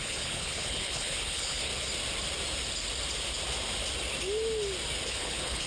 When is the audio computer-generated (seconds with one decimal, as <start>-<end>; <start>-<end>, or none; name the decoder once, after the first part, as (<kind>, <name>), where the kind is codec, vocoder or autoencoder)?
0.0-1.7 (codec, HILCodec); 5.1-5.7